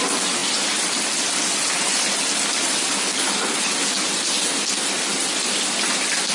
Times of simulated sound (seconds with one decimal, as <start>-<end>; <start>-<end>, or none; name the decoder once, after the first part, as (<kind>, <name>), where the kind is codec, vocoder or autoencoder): none